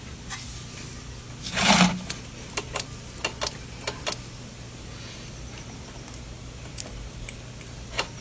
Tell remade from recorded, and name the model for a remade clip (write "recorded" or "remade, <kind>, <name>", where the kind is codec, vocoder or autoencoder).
recorded